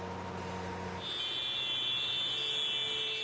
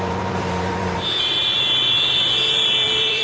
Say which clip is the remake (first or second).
second